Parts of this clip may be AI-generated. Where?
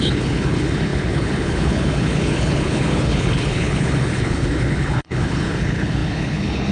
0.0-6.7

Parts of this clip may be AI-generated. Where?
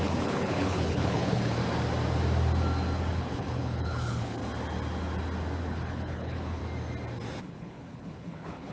0.0-1.6; 3.2-4.4; 5.6-6.6; 7.4-8.7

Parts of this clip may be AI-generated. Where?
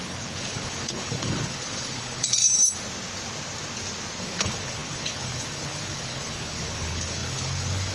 0.0-2.4; 4.2-7.9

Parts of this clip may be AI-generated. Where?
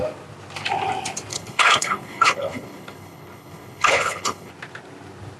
1.3-4.5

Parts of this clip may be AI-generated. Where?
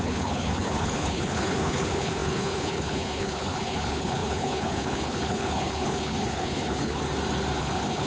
0.0-7.0; 7.6-8.1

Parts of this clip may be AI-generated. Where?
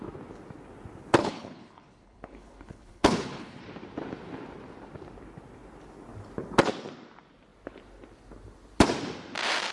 1.2-3.6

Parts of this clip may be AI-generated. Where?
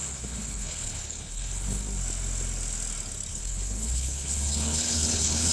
0.0-1.8; 3.3-5.5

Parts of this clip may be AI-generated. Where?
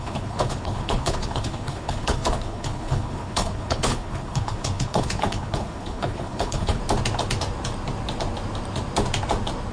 0.0-6.8